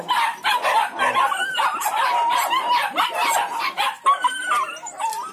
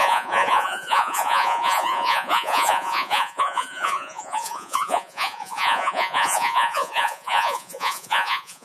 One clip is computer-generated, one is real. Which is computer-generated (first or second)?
second